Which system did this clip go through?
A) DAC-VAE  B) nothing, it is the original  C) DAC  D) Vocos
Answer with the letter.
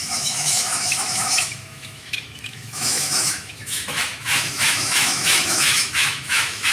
A